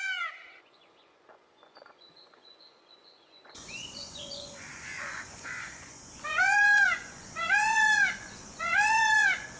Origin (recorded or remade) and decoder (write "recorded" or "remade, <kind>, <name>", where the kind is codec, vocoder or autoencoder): remade, vocoder, Vocos